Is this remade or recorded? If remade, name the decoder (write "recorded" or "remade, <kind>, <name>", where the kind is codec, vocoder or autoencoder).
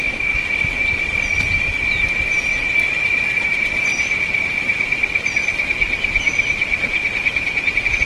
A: remade, vocoder, BigVGAN v2